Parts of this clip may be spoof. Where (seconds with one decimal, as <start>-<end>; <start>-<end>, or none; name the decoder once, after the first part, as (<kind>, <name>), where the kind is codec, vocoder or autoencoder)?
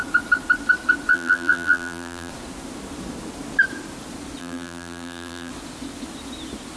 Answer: 1.1-2.3 (vocoder, BigVGAN v2); 4.4-5.5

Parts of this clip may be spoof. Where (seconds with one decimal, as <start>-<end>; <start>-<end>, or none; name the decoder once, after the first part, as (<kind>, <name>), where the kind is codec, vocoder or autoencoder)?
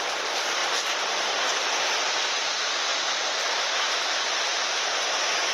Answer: 0.6-1.7 (vocoder, BigVGAN v2); 2.9-3.9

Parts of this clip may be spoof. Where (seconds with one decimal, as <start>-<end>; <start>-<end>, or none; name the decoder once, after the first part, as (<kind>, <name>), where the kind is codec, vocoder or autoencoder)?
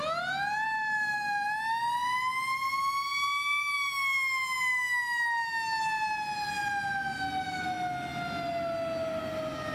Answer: none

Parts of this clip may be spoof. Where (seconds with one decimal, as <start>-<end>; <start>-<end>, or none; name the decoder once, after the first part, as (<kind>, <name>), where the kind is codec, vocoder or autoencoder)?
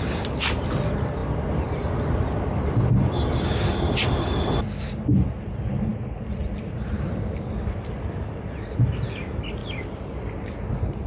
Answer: 1.2-2.0 (vocoder, BigVGAN v2); 6.4-8.3; 9.6-10.1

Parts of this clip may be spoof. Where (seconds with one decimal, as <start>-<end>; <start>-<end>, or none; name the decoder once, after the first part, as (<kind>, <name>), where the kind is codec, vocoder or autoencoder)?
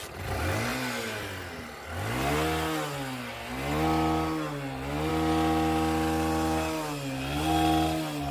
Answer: none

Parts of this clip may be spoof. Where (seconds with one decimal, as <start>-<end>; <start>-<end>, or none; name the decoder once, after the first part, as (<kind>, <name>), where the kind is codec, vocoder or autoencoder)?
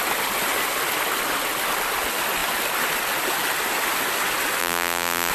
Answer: 4.6-5.3 (vocoder, BigVGAN v2)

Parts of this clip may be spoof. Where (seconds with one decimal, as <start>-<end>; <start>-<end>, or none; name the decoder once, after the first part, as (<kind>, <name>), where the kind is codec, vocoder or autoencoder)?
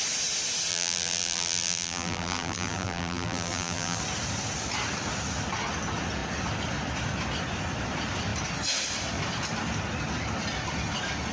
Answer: 0.7-4.0 (vocoder, BigVGAN v2)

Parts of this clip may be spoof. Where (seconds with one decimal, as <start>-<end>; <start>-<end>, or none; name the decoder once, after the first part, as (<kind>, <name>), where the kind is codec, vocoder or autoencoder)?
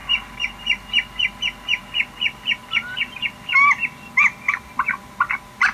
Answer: none